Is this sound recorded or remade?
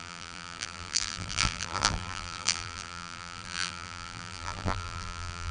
remade